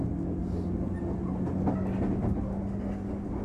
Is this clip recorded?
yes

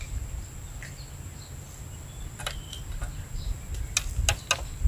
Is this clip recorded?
yes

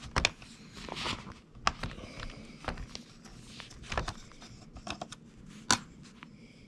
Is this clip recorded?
yes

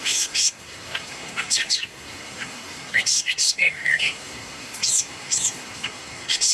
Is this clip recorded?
no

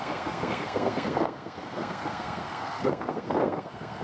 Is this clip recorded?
no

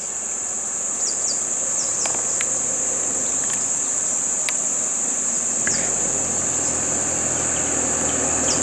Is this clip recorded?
yes